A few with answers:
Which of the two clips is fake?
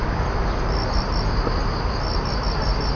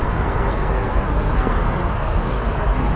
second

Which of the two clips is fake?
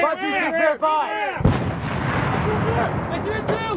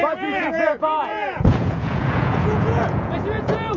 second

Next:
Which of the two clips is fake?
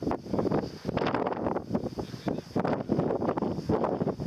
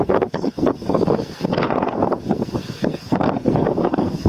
second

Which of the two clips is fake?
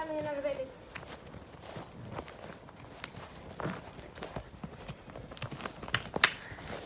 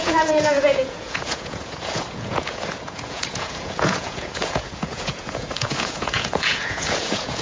second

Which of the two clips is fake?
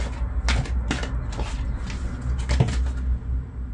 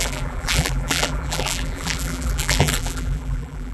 second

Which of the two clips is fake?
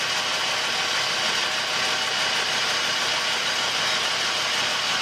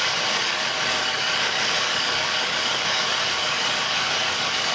second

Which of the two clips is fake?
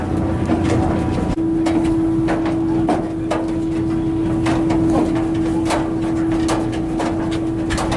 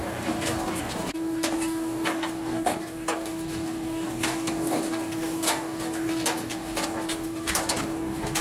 second